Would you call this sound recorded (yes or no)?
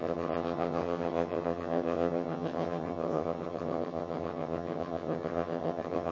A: no